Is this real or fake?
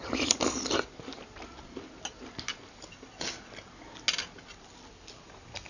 real